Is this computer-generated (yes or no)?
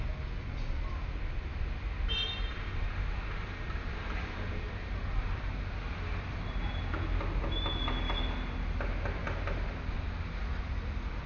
no